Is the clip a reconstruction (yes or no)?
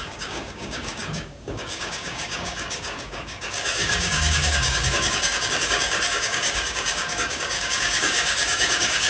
yes